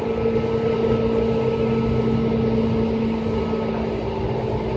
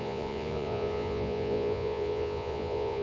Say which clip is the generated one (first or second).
second